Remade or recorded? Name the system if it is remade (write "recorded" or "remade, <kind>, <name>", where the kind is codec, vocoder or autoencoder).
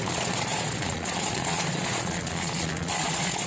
remade, vocoder, Vocos